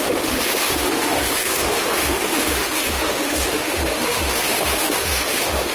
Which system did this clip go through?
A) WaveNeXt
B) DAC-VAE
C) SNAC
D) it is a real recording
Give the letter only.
B